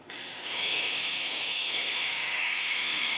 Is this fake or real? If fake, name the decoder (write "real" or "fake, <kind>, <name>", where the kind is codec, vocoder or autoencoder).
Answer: fake, autoencoder, DAC-VAE